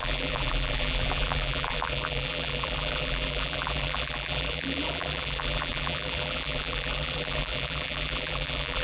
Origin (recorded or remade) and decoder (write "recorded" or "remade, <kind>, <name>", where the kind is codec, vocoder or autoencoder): remade, vocoder, BigVGAN v2